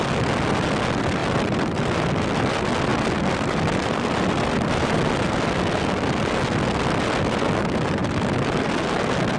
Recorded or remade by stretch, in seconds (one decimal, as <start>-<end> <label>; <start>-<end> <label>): 0.0-1.2 recorded; 1.2-2.5 remade; 2.5-2.9 recorded; 2.9-5.0 remade; 5.0-8.0 recorded; 8.0-8.7 remade; 8.7-9.4 recorded